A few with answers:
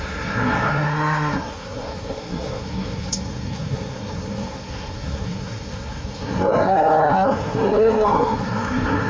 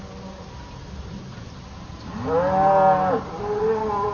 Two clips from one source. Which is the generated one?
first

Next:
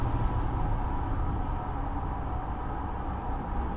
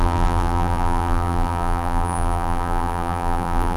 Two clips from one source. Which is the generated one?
second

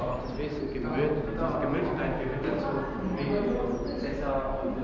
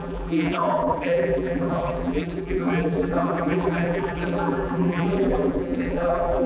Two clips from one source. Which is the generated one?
second